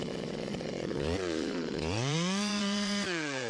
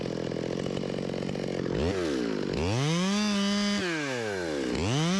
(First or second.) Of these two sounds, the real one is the second